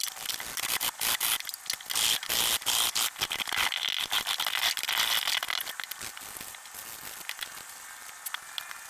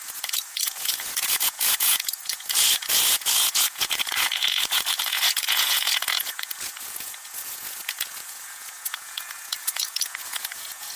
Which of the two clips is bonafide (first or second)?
first